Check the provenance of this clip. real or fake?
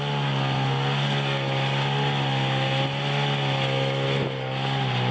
real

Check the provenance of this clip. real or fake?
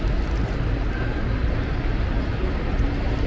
real